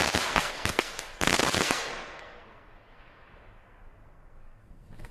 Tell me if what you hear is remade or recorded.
remade